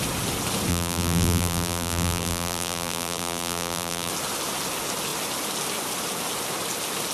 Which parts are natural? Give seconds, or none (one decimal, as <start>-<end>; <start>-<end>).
0.0-0.7; 4.1-7.1